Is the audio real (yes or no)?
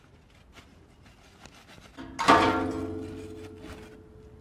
yes